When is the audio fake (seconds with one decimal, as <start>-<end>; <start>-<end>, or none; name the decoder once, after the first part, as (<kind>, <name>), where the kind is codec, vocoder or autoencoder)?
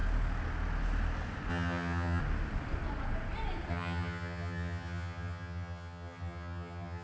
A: 1.5-2.2 (vocoder, HiFi-GAN); 3.7-7.0